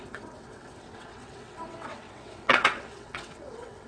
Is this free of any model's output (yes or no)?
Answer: no